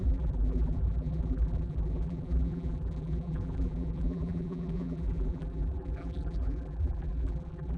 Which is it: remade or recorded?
remade